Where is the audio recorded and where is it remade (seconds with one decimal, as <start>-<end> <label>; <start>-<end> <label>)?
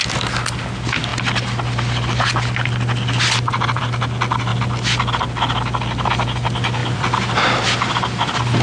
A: 0.0-6.8 recorded; 6.8-8.2 remade; 8.2-8.6 recorded